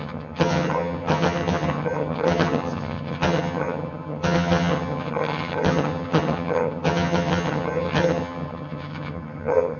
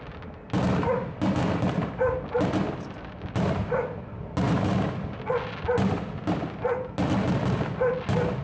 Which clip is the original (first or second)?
second